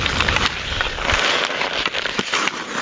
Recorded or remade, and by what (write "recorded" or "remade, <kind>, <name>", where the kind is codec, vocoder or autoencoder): recorded